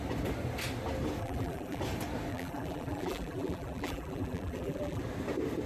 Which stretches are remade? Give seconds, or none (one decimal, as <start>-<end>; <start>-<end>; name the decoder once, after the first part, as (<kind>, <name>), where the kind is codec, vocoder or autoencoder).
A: 1.2-1.8 (vocoder, BigVGAN v2); 2.3-5.0